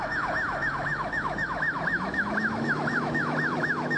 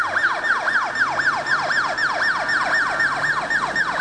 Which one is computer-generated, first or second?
first